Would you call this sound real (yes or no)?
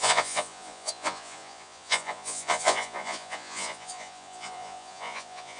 no